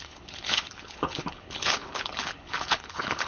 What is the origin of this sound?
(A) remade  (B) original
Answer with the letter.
A